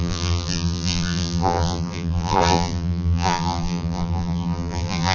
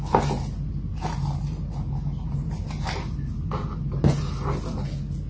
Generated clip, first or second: first